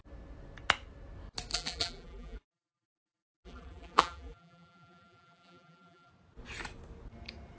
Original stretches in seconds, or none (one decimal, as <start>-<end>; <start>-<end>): 0.0-1.5; 6.1-7.6